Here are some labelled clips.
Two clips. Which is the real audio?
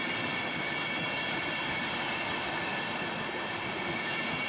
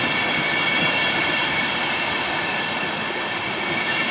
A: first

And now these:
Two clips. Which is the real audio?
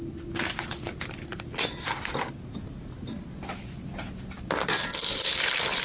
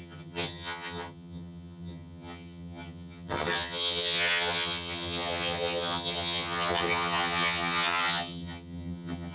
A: first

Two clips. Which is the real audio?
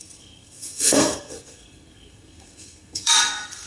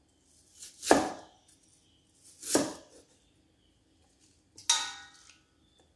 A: second